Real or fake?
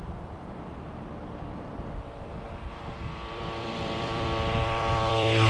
fake